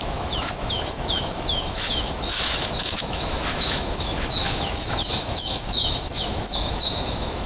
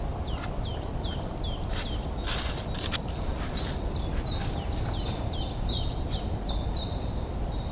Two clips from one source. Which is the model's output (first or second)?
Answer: first